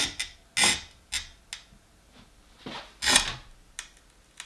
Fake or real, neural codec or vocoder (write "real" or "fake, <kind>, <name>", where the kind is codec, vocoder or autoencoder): real